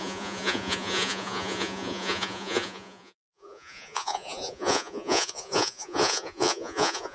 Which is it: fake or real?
fake